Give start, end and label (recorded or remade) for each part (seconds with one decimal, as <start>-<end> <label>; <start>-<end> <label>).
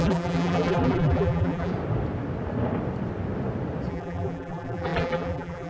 0.0-1.7 remade; 1.7-3.9 recorded; 3.9-5.7 remade